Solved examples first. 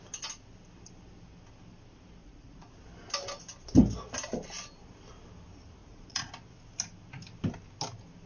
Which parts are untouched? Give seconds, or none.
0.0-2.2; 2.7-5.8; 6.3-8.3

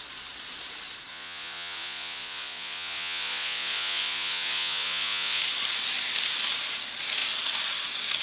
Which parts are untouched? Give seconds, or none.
0.0-1.1; 5.4-8.2

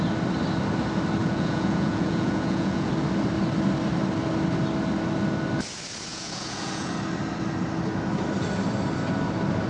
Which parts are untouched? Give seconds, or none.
0.0-1.2; 2.9-6.1; 6.9-9.7

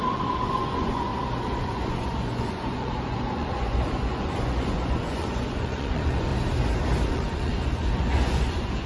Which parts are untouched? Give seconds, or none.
1.1-1.6; 6.3-7.1

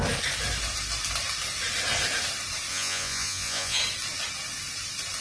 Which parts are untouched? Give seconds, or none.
0.0-2.7; 3.8-5.2

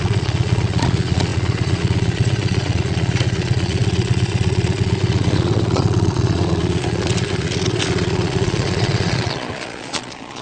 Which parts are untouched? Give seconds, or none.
none

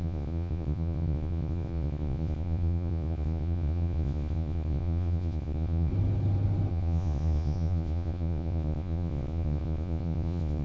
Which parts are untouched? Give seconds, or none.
5.9-6.7